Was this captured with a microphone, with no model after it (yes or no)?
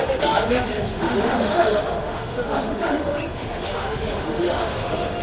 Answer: no